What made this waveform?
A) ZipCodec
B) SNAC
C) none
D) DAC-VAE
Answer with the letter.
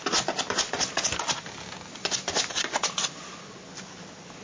C